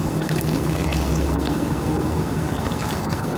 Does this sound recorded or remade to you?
remade